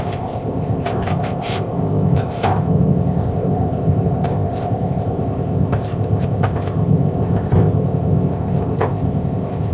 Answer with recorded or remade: remade